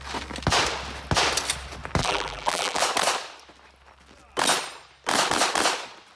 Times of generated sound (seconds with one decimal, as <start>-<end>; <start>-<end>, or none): 2.0-2.8